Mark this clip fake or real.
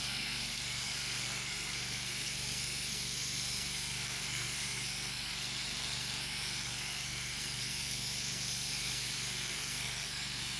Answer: fake